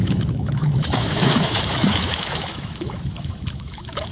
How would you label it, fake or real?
fake